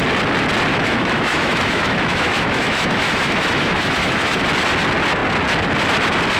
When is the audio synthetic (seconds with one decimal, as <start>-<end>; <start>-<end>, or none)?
0.7-4.4